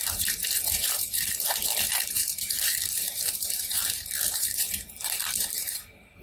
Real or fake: fake